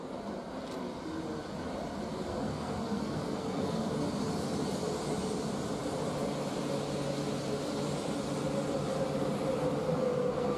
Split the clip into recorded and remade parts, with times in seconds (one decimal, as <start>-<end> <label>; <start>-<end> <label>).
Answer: 0.0-2.1 recorded; 2.1-3.9 remade; 3.9-9.8 recorded; 9.8-10.6 remade